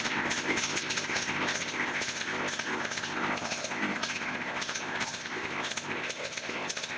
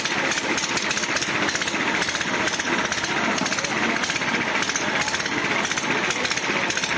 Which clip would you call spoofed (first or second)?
first